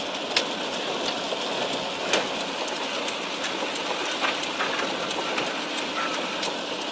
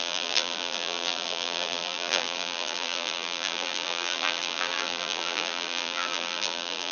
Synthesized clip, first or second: second